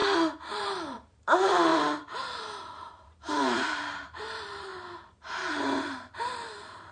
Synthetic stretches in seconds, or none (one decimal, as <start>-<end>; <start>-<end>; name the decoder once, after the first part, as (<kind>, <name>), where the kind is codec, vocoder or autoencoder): 0.6-4.7 (vocoder, BigVGAN v2); 5.3-6.9